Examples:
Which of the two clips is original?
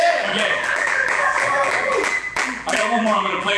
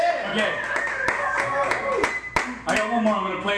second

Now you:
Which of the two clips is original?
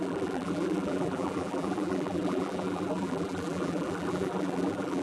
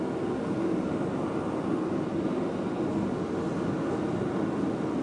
second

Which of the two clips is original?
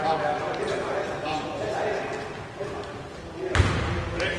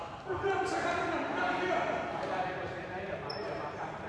first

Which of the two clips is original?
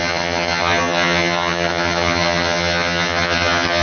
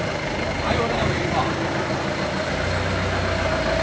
second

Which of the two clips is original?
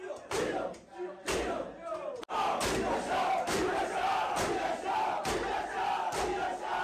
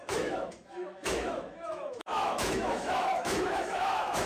first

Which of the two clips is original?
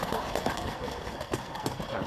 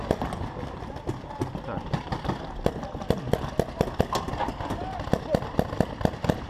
second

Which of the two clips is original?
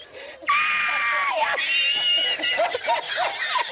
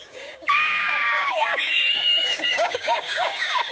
first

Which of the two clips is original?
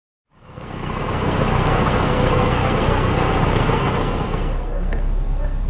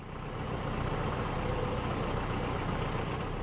second